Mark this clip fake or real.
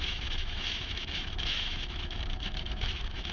fake